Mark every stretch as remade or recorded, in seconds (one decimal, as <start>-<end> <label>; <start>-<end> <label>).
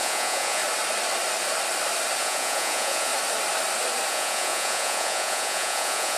0.0-0.6 remade; 0.6-2.2 recorded; 2.2-3.1 remade; 3.1-4.1 recorded; 4.1-6.2 remade